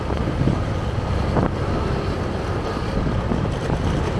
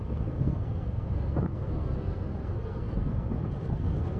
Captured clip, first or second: first